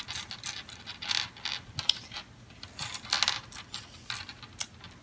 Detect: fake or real real